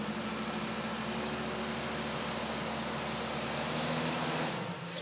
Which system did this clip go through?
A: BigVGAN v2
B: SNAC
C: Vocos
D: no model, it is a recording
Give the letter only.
D